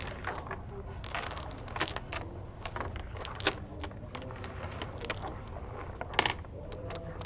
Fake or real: real